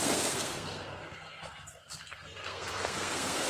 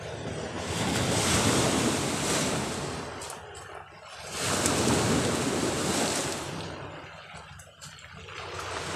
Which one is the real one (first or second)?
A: second